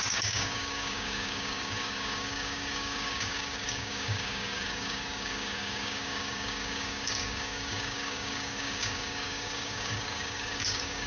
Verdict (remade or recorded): remade